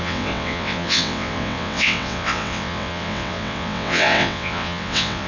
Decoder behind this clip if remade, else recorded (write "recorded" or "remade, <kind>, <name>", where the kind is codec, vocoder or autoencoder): remade, vocoder, WaveNeXt